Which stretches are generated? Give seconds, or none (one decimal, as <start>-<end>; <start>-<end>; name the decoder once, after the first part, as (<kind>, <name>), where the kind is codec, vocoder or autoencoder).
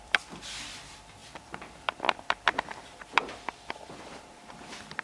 0.0-5.0 (vocoder, BigVGAN v2)